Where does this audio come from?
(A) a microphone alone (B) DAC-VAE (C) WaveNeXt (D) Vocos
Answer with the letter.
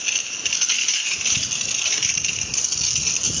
A